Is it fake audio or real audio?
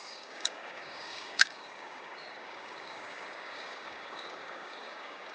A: fake